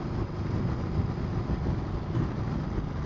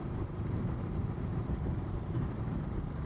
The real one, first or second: first